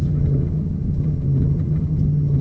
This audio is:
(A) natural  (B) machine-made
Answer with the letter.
B